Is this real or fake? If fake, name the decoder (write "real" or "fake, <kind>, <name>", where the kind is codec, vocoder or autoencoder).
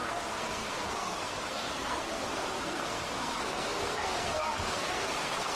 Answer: fake, codec, SNAC